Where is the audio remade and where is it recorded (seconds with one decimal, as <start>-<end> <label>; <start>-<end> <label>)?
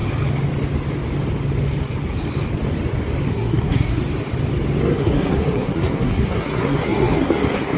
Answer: 0.0-3.3 recorded; 3.3-4.0 remade; 4.0-4.8 recorded; 4.8-7.8 remade